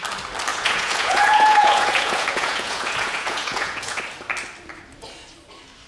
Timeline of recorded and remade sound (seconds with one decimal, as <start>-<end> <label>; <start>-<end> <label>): 0.0-0.5 recorded; 0.5-4.0 remade; 4.0-5.9 recorded